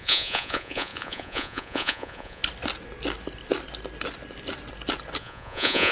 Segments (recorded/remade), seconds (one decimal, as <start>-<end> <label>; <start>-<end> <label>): 0.0-2.4 remade; 2.4-5.2 recorded; 5.2-5.9 remade

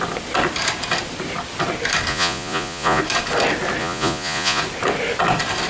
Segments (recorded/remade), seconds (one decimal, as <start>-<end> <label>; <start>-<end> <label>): 0.0-2.1 recorded; 2.1-3.0 remade; 3.0-3.8 recorded; 3.8-4.6 remade; 4.6-5.7 recorded

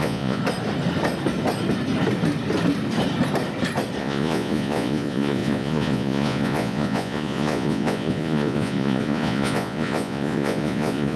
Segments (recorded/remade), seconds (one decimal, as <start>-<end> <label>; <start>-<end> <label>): 0.0-0.4 remade; 0.4-4.0 recorded; 4.0-11.2 remade

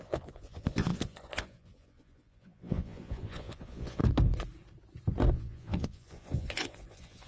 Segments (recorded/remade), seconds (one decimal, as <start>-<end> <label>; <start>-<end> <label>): 0.0-4.0 remade; 4.0-5.3 recorded; 5.3-7.3 remade

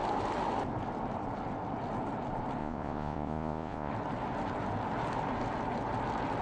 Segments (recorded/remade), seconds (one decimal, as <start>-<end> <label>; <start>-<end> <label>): 0.0-2.6 recorded; 2.6-3.9 remade; 3.9-6.4 recorded

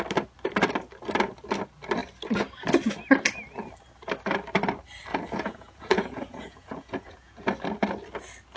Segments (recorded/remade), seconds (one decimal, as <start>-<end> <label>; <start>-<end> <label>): 0.0-5.1 recorded; 5.1-7.4 remade; 7.4-8.6 recorded

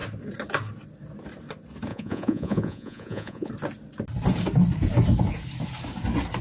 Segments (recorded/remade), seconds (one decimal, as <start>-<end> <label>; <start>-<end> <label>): 0.0-1.9 recorded; 1.9-3.5 remade; 3.5-6.4 recorded

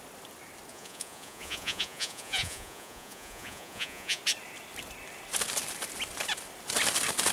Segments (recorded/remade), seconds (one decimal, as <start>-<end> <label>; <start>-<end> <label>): 0.0-0.7 recorded; 0.7-4.2 remade; 4.2-7.3 recorded